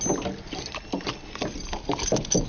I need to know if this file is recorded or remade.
recorded